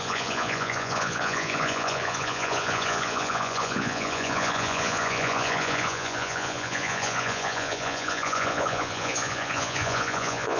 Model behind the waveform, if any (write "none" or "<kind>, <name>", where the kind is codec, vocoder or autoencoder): vocoder, Vocos